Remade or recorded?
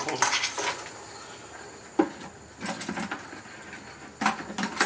recorded